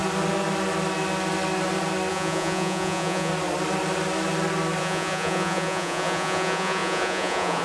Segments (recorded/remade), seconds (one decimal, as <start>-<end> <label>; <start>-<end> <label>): 0.0-2.1 recorded; 2.1-3.3 remade; 3.3-4.8 recorded; 4.8-7.6 remade